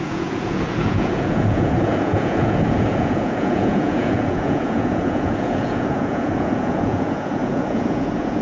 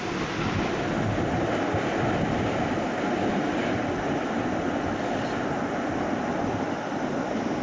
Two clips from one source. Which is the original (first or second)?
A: second